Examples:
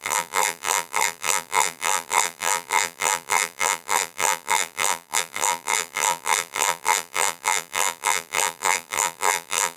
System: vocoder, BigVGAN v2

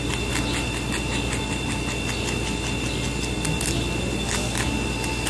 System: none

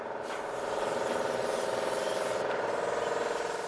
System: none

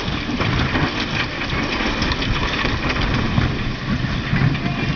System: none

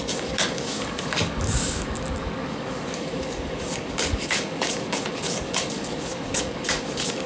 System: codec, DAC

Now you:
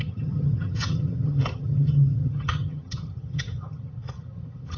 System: vocoder, HiFi-GAN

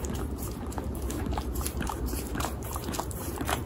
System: vocoder, BigVGAN v2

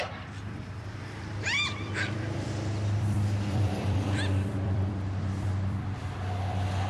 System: vocoder, BigVGAN v2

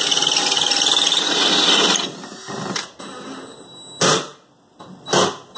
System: none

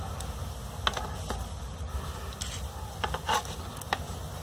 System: none